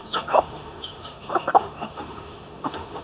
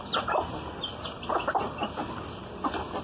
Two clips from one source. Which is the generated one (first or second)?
first